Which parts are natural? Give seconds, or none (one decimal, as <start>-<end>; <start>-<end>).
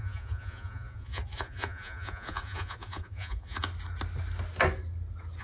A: 3.7-5.4